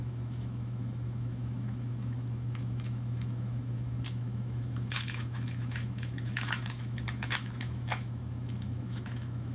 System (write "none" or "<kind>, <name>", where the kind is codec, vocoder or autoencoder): autoencoder, DAC-VAE